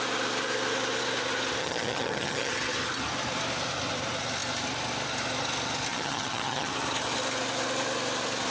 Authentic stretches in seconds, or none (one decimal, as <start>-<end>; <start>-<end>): 0.0-1.6; 2.5-5.9; 6.7-8.5